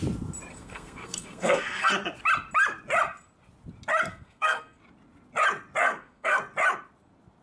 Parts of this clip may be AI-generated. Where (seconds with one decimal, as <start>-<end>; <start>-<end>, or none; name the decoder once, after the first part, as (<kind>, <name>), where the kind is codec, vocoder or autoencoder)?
0.5-1.9 (codec, SNAC); 4.1-4.8; 5.8-6.4